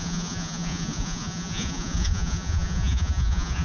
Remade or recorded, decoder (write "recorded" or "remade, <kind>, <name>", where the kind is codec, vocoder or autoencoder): remade, vocoder, Vocos